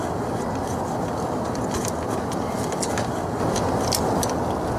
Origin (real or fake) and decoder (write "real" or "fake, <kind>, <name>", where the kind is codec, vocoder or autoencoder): real